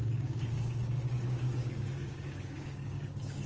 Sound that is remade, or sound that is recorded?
remade